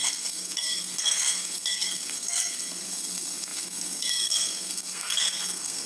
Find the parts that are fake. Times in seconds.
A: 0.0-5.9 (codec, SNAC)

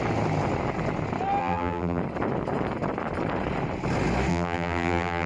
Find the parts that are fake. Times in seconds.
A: 1.4-2.0 (vocoder, BigVGAN v2); 4.3-5.3

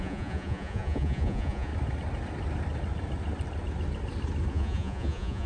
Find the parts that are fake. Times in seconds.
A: 0.0-1.7 (vocoder, Vocos); 4.5-5.5